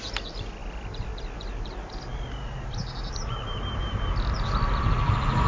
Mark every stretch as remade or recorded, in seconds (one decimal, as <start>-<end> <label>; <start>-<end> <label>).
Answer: 0.0-5.5 recorded